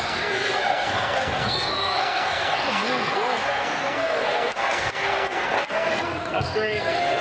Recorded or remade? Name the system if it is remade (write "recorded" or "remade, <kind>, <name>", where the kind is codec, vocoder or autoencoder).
remade, codec, SNAC